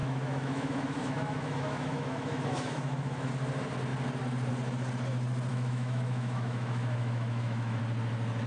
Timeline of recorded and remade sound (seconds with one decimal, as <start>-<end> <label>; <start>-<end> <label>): 0.0-3.3 remade; 3.3-5.5 recorded; 5.5-7.8 remade; 7.8-8.5 recorded